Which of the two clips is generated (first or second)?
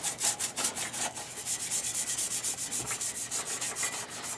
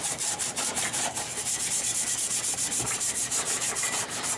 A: second